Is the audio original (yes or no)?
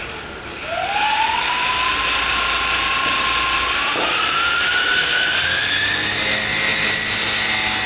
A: yes